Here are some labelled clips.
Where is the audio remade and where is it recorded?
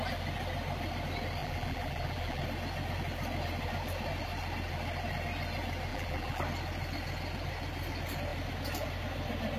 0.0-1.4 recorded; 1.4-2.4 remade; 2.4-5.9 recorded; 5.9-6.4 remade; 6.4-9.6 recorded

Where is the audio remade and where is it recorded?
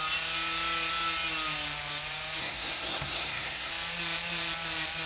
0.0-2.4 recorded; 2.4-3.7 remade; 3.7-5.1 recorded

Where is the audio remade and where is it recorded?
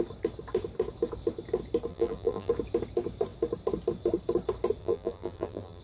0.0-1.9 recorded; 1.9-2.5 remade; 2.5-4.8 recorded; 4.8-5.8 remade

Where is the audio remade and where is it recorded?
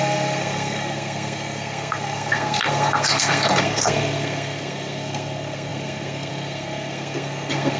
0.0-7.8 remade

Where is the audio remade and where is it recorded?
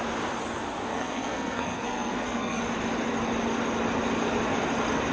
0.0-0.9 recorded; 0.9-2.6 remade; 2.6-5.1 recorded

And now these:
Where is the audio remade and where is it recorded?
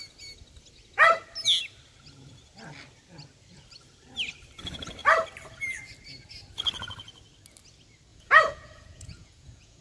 0.0-8.1 recorded; 8.1-9.8 remade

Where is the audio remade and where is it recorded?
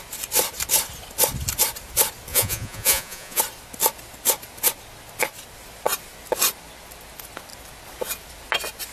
0.0-2.3 recorded; 2.3-3.4 remade; 3.4-8.9 recorded